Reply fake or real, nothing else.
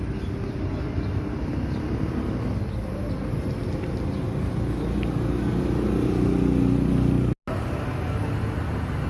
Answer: real